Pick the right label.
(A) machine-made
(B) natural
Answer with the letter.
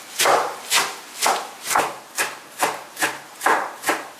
A